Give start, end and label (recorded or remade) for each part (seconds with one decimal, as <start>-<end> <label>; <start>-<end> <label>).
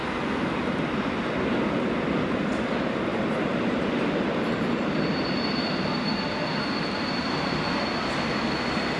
0.0-3.1 recorded; 3.1-7.6 remade; 7.6-9.0 recorded